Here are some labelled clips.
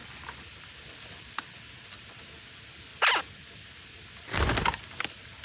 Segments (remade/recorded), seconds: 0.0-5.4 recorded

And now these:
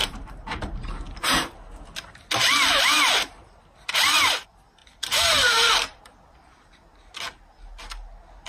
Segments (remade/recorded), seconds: 0.0-0.6 remade; 0.6-4.8 recorded; 4.8-6.7 remade; 6.7-8.5 recorded

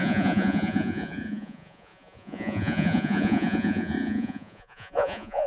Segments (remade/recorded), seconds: 0.0-5.5 remade